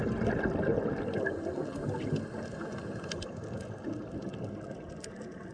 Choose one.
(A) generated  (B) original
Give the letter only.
B